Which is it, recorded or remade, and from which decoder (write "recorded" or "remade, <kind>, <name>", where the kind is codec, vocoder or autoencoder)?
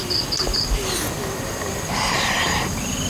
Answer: recorded